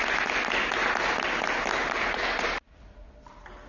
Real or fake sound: real